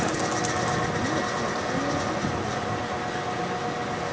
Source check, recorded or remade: recorded